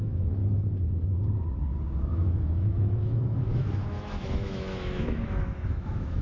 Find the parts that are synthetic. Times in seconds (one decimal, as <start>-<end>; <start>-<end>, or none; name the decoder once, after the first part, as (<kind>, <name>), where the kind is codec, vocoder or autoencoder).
0.0-0.4 (autoencoder, DAC-VAE); 2.1-6.2